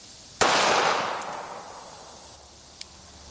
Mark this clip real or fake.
real